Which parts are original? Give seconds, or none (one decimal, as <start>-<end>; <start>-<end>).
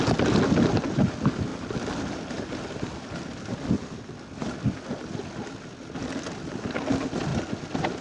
0.0-8.0